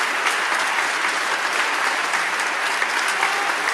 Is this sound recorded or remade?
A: recorded